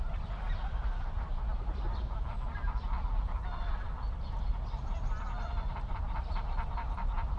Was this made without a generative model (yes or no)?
yes